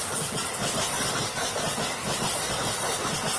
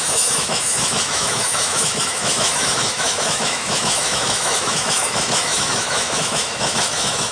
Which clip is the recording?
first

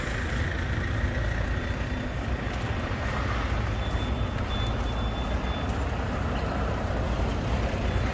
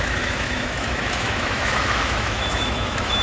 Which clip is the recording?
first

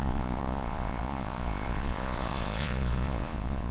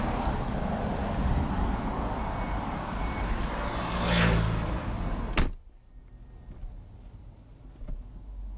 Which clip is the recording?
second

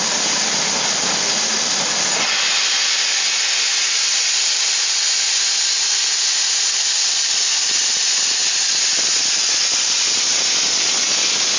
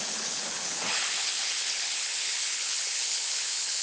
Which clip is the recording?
first